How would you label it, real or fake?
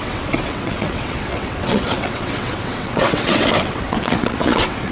fake